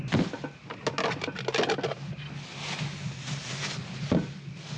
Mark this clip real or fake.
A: real